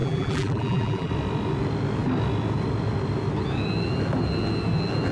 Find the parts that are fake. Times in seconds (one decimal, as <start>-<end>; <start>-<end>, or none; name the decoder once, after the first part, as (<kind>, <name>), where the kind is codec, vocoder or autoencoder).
0.0-1.1 (vocoder, BigVGAN v2)